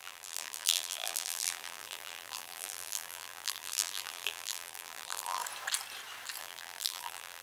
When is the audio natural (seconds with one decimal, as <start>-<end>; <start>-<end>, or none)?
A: 5.4-6.4